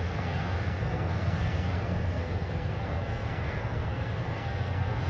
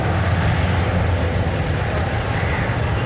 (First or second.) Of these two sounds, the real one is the second